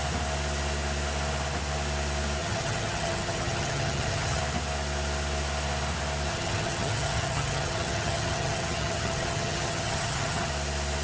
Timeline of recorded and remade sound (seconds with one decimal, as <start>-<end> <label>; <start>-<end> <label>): 0.0-2.4 recorded; 2.4-4.4 remade; 4.4-6.3 recorded; 6.3-10.5 remade; 10.5-11.0 recorded